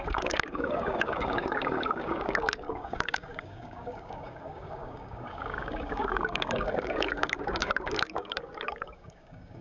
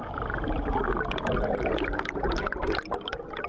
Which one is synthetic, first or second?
first